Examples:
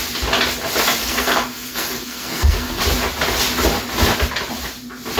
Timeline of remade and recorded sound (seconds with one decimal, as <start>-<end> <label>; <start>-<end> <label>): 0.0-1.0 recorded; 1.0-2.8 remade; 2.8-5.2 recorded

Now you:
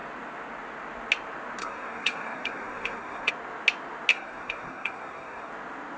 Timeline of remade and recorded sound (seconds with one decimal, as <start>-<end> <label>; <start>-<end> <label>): 0.0-1.6 recorded; 1.6-3.3 remade; 3.3-4.1 recorded; 4.1-5.5 remade; 5.5-6.0 recorded

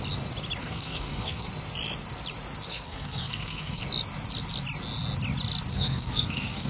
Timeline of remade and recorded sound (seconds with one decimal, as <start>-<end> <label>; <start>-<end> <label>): 0.0-0.6 recorded; 0.6-1.5 remade; 1.5-2.7 recorded; 2.7-3.8 remade; 3.8-5.7 recorded; 5.7-6.7 remade

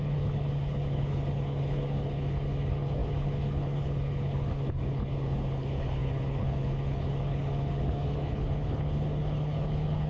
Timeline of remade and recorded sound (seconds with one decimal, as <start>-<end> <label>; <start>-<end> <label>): 0.0-10.1 remade